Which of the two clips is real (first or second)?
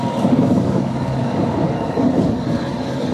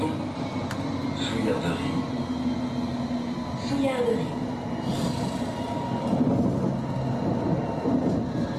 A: second